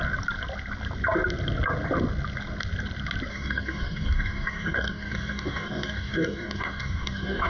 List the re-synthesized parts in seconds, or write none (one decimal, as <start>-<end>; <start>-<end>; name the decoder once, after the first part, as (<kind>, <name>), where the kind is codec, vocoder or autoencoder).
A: 3.3-7.5 (codec, DAC)